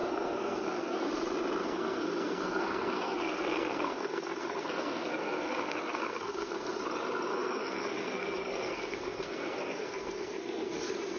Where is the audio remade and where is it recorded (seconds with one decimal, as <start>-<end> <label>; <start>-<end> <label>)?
0.0-1.1 remade; 1.1-1.6 recorded; 1.6-6.8 remade; 6.8-7.3 recorded; 7.3-11.2 remade